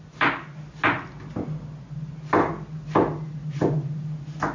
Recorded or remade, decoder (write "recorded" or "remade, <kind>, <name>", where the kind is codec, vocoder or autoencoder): recorded